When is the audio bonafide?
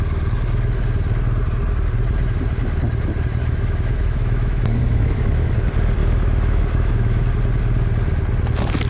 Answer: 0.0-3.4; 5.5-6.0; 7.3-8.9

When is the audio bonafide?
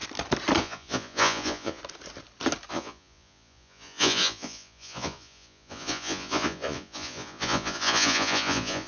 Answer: 0.0-0.6; 1.8-2.7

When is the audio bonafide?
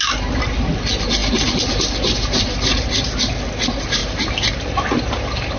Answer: 0.0-5.6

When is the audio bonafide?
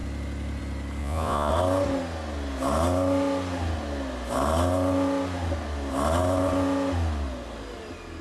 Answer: 0.0-1.0; 1.5-8.2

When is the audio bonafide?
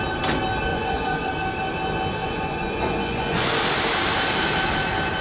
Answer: 0.0-0.7; 1.3-2.2; 3.5-5.2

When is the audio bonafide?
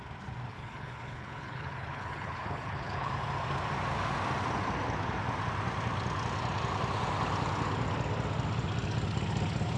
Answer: 0.0-0.5; 3.1-9.8